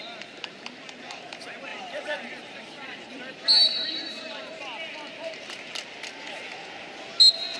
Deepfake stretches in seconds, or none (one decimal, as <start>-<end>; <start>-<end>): 1.7-5.7